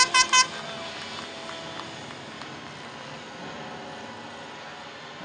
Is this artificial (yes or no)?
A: no